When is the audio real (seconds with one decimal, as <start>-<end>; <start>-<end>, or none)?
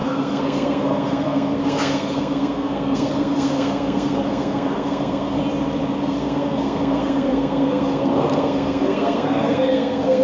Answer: 5.4-6.0